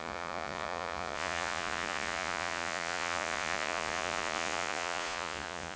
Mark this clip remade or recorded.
remade